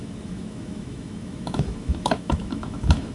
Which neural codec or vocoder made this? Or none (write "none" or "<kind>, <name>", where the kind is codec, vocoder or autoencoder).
autoencoder, DAC-VAE